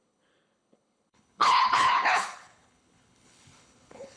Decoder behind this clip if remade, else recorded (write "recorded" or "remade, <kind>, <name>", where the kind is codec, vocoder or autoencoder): remade, codec, HILCodec